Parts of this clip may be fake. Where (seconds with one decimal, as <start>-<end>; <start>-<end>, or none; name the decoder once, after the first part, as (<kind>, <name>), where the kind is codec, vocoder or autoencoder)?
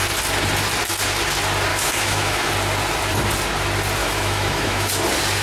1.7-2.5 (autoencoder, DAC-VAE); 4.0-4.9